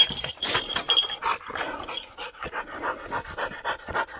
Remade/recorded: recorded